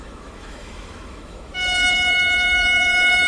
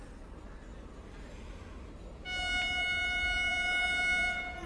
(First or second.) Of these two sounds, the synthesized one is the first